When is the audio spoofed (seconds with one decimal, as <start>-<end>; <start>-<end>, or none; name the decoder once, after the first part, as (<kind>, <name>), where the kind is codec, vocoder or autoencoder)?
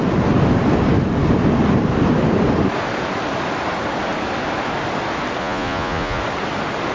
5.4-6.2 (vocoder, Vocos)